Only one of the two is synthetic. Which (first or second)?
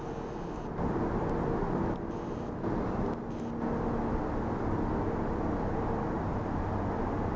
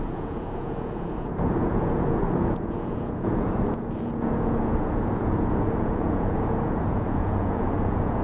second